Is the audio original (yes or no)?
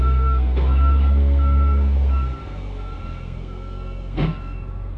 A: no